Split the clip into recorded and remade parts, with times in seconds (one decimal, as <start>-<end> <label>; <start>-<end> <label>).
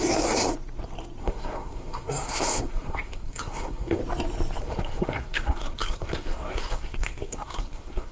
0.0-0.5 remade; 0.5-1.2 recorded; 1.2-4.0 remade; 4.0-4.6 recorded; 4.6-8.1 remade